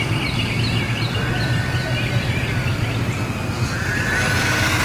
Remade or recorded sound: recorded